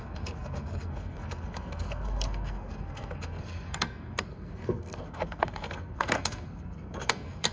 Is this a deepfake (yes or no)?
yes